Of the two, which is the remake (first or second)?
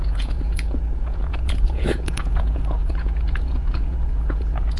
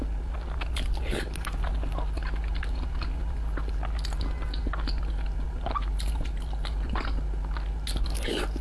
first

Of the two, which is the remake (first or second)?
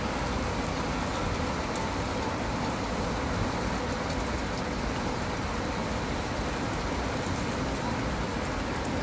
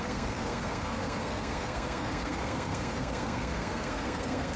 second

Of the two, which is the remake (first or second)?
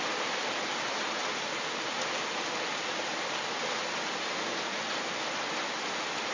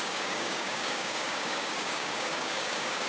second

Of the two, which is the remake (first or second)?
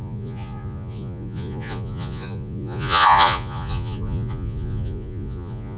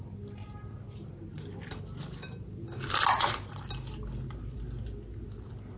first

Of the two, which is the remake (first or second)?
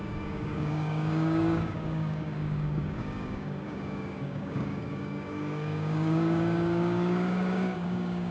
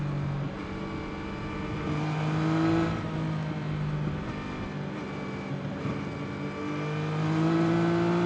first